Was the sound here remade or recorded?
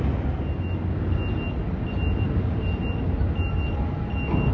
recorded